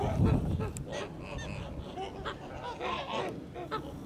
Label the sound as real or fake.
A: real